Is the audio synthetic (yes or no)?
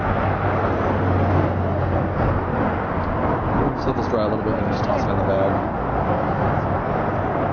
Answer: no